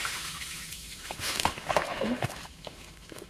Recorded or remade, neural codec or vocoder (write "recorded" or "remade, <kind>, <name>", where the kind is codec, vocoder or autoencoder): remade, autoencoder, DAC-VAE